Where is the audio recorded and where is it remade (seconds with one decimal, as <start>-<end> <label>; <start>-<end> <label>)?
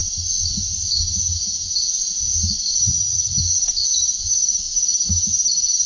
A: 0.0-2.8 recorded; 2.8-3.4 remade; 3.4-5.9 recorded